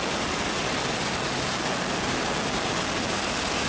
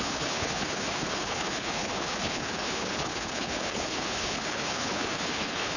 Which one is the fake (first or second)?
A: second